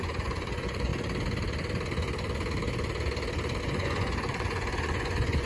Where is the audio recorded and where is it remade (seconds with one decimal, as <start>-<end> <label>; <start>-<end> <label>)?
0.0-0.9 remade; 0.9-3.6 recorded; 3.6-5.5 remade